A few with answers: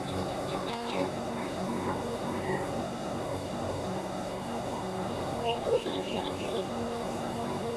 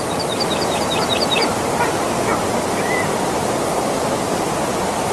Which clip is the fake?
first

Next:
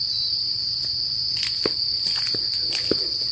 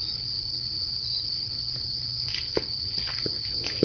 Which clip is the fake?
second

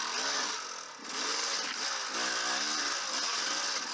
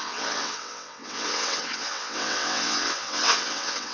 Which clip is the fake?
second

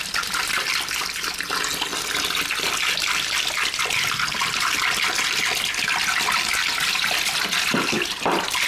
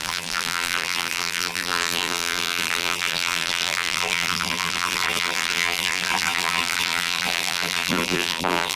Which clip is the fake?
second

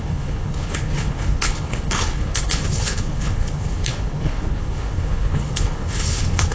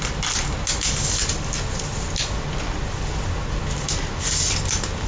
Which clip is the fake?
first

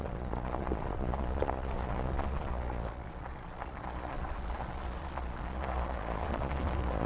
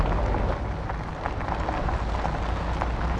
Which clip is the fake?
first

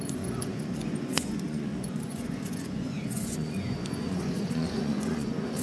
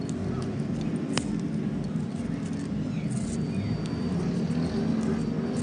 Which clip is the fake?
first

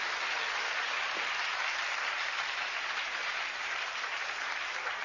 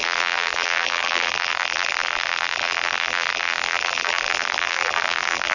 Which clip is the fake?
second